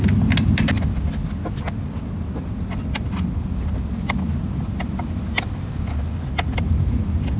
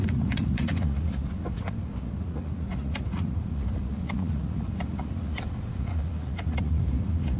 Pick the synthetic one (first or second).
second